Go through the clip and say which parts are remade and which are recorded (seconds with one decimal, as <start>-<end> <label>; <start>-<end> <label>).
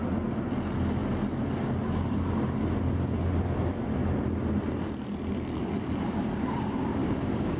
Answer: 0.0-7.0 recorded; 7.0-7.6 remade